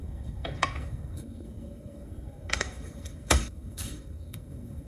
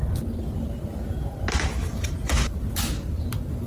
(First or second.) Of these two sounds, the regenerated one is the first